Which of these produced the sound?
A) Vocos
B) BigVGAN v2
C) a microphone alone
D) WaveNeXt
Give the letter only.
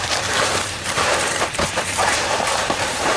B